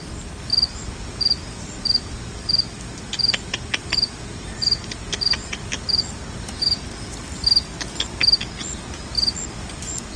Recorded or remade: recorded